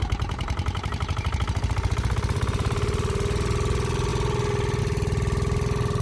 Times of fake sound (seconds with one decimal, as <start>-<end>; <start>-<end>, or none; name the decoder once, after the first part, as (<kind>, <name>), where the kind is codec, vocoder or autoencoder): none